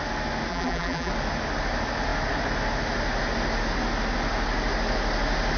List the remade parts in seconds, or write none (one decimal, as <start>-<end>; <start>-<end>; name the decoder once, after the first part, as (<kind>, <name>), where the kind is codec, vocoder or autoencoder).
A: 0.5-1.1 (vocoder, BigVGAN v2)